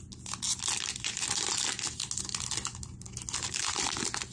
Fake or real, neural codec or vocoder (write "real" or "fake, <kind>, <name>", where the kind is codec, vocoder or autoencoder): real